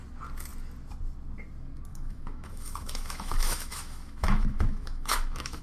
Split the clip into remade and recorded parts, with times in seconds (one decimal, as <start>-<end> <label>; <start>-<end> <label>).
0.0-1.9 recorded; 1.9-5.6 remade